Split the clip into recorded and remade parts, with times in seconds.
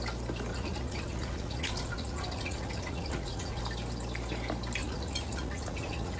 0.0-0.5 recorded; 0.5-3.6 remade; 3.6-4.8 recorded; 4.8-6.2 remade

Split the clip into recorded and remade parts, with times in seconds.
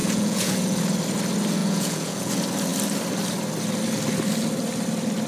0.0-0.8 remade; 0.8-1.6 recorded; 1.6-2.3 remade; 2.3-5.3 recorded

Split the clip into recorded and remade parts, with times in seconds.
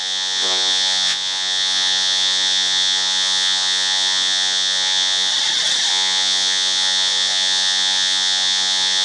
0.0-5.3 remade; 5.3-5.9 recorded; 5.9-9.0 remade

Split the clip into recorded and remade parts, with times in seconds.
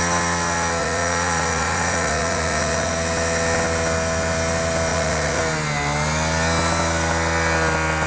0.0-0.8 recorded; 0.8-2.9 remade; 2.9-4.9 recorded; 4.9-5.4 remade; 5.4-8.1 recorded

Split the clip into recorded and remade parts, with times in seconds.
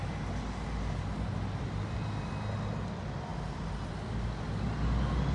0.0-5.3 recorded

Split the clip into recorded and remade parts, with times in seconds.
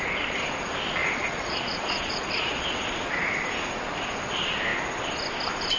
0.0-1.0 recorded; 1.0-3.4 remade; 3.4-5.8 recorded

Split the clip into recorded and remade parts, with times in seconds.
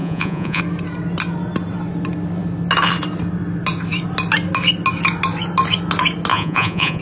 0.0-0.6 remade; 0.6-6.3 recorded; 6.3-7.0 remade